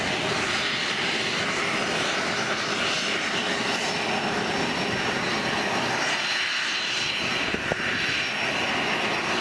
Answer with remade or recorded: recorded